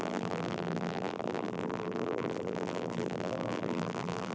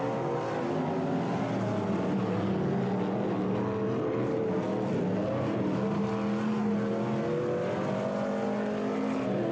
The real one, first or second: second